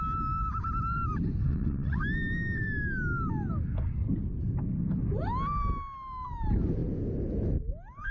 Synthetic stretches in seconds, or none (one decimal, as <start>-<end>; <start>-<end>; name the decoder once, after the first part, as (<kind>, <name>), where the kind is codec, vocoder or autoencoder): 1.4-2.0 (vocoder, WaveNeXt)